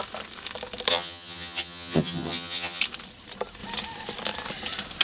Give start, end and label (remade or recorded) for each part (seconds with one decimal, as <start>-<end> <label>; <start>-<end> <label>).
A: 0.0-0.9 recorded; 0.9-2.8 remade; 2.8-5.0 recorded